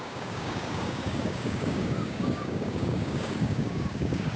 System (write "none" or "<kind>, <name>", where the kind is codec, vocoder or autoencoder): codec, DAC